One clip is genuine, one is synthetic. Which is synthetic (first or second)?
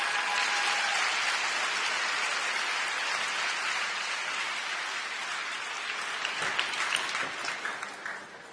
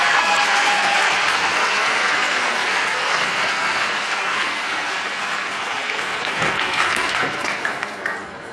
second